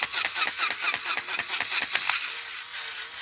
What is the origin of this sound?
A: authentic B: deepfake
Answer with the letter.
A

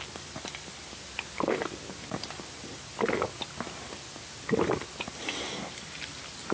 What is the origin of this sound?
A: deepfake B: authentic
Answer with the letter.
B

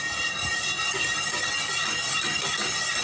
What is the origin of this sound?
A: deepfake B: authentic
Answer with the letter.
B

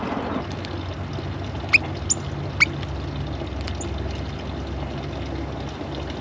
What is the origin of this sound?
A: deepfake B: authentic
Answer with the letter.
B